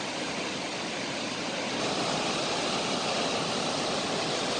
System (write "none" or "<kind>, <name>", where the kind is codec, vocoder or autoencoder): vocoder, BigVGAN v2